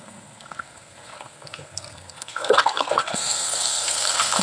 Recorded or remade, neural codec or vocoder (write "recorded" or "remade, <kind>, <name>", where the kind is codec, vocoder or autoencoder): remade, codec, SNAC